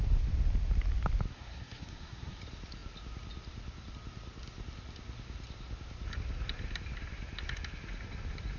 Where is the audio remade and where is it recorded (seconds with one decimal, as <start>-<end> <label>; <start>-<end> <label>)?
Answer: 0.0-1.3 recorded; 1.3-2.4 remade; 2.4-8.6 recorded